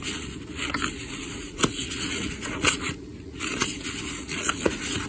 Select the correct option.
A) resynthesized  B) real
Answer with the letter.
A